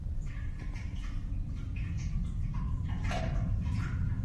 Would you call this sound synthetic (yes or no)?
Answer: no